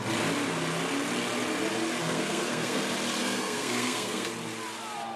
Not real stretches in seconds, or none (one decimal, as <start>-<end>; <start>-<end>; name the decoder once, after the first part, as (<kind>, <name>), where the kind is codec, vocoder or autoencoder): 2.0-2.8 (codec, SNAC); 3.2-4.3